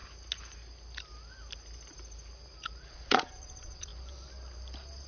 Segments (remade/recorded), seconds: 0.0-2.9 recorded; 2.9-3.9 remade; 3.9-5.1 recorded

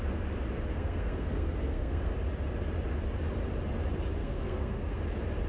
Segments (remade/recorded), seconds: 0.0-0.7 recorded; 0.7-2.1 remade; 2.1-4.2 recorded; 4.2-5.0 remade; 5.0-5.5 recorded

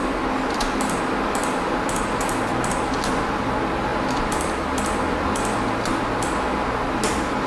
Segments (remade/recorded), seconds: 0.0-7.5 recorded

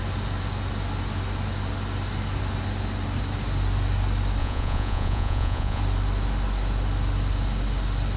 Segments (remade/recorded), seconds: 0.0-4.4 recorded; 4.4-5.8 remade; 5.8-8.2 recorded

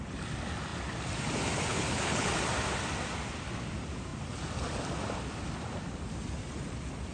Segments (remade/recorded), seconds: 0.0-1.7 recorded; 1.7-2.3 remade; 2.3-7.1 recorded

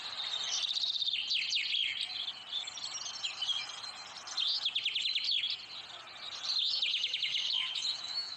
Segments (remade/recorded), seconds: 0.0-6.9 recorded; 6.9-8.4 remade